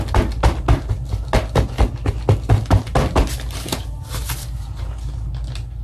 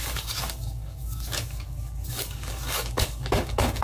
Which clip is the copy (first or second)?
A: second